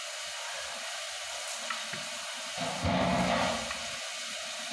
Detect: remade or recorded recorded